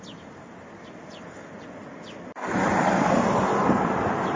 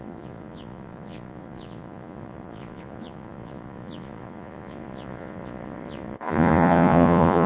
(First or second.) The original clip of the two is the first